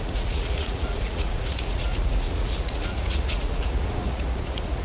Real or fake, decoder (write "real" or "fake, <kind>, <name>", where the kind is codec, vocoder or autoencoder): fake, vocoder, Vocos